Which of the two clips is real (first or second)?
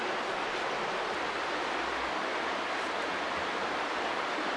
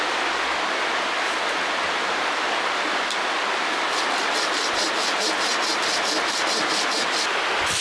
second